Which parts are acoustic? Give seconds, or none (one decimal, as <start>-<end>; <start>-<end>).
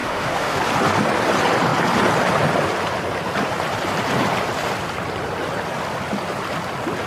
0.6-7.1